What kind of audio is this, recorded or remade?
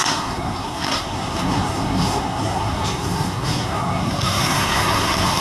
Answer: remade